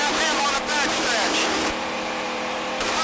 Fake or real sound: fake